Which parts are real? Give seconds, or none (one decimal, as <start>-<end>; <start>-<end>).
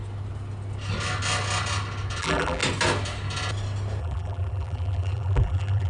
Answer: 0.0-2.2; 2.6-4.0